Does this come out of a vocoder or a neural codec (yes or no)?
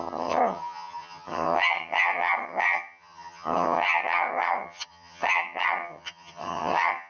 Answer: yes